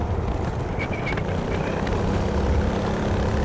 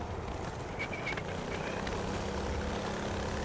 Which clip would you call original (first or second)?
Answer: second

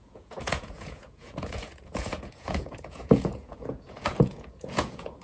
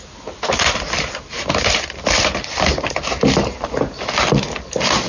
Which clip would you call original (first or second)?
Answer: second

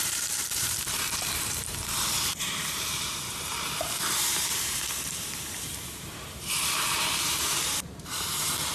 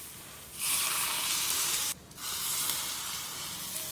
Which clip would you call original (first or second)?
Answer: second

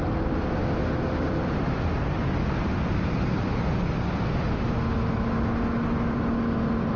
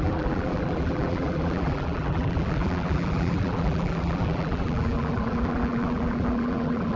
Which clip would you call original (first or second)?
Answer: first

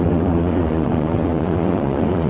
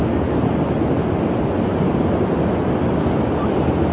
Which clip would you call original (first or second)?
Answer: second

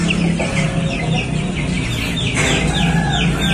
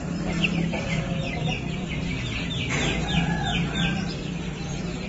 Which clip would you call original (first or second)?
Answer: first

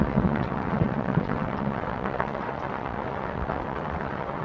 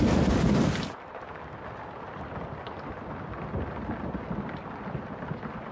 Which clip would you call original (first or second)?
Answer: second